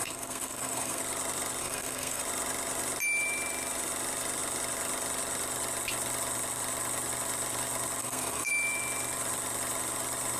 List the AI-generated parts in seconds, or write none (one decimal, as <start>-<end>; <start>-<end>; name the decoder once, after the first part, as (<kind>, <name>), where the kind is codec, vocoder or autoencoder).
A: 0.0-1.0 (codec, SNAC); 1.6-2.2; 8.0-8.5